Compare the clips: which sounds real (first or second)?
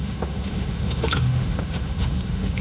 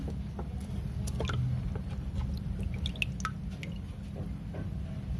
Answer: second